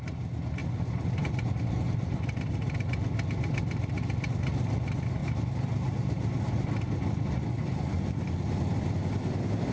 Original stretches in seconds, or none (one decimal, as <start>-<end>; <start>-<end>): 0.0-9.7